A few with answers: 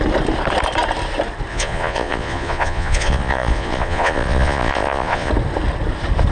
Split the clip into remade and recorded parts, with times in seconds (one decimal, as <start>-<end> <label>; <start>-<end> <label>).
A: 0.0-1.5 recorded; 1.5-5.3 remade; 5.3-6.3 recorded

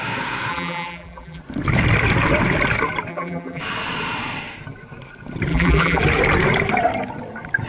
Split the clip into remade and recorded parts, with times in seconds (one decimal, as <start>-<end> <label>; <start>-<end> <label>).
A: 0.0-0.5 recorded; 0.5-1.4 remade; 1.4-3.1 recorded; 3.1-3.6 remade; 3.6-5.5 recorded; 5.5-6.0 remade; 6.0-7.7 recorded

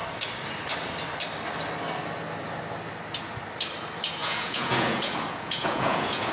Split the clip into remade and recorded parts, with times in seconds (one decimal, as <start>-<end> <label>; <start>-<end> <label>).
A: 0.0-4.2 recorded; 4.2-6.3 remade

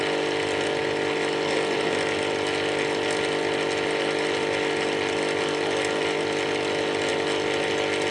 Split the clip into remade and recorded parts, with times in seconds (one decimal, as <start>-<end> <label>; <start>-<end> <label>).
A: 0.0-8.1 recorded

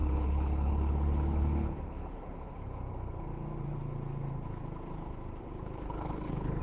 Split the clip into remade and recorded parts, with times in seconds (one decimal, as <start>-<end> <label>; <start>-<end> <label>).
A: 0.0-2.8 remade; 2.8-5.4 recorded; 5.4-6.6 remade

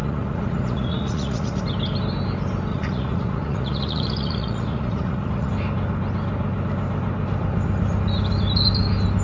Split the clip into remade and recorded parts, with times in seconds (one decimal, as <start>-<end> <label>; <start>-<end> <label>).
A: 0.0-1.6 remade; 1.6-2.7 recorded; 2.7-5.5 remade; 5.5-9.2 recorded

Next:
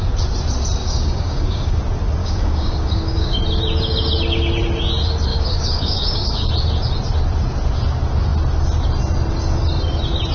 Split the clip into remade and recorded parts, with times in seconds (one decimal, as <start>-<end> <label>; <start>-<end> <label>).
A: 0.0-0.8 recorded; 0.8-1.8 remade; 1.8-2.2 recorded; 2.2-3.4 remade; 3.4-5.3 recorded; 5.3-6.5 remade; 6.5-10.3 recorded